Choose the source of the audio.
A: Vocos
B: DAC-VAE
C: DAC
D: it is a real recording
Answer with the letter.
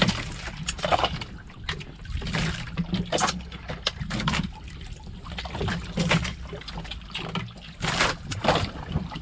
D